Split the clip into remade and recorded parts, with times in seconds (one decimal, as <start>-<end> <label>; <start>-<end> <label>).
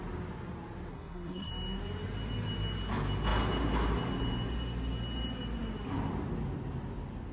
0.0-0.9 recorded; 0.9-1.5 remade; 1.5-7.3 recorded